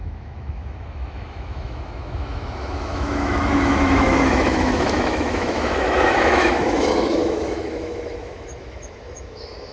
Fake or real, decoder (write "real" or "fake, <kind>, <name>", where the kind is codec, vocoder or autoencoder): fake, autoencoder, DAC-VAE